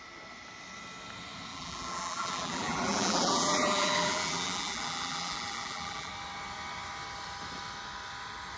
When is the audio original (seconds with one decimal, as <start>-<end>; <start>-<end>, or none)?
0.0-1.5; 6.1-8.6